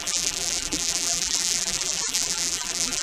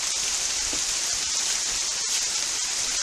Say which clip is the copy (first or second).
first